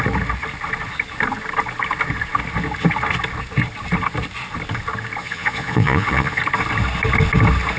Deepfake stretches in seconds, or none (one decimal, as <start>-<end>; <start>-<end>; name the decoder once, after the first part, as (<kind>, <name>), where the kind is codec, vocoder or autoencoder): 5.2-6.4 (vocoder, Vocos)